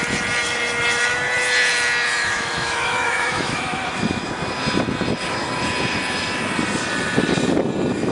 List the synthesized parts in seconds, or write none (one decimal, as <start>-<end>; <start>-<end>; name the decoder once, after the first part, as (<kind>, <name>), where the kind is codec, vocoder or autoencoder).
2.2-3.9 (autoencoder, DAC-VAE)